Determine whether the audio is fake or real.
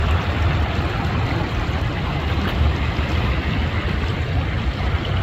real